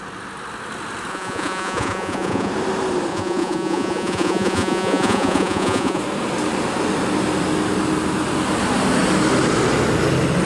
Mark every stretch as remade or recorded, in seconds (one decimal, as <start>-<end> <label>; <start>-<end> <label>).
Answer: 0.0-1.1 recorded; 1.1-2.5 remade; 2.5-3.1 recorded; 3.1-6.0 remade; 6.0-10.4 recorded

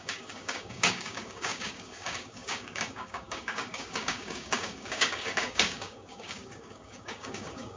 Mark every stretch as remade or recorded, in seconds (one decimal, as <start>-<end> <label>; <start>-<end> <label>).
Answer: 0.0-7.8 remade

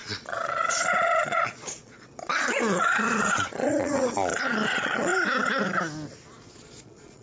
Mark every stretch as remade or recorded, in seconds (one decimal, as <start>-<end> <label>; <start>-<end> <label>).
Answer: 0.0-5.1 remade; 5.1-6.5 recorded; 6.5-7.2 remade

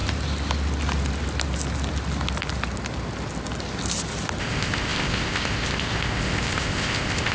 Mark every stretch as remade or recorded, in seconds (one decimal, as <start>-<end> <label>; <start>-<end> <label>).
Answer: 0.0-4.4 recorded; 4.4-7.3 remade

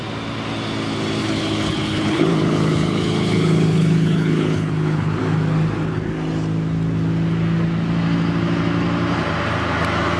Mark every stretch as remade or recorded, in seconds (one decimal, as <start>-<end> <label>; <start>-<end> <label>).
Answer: 0.0-1.2 recorded; 1.2-5.2 remade; 5.2-10.2 recorded

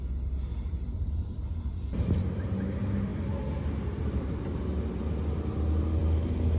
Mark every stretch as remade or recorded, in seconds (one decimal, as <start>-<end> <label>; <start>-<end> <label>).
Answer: 0.0-0.5 recorded; 0.5-1.4 remade; 1.4-3.1 recorded; 3.1-4.6 remade; 4.6-6.6 recorded

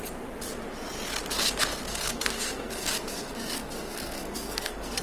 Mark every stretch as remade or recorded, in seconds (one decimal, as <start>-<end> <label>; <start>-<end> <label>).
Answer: 0.0-1.9 recorded; 1.9-5.0 remade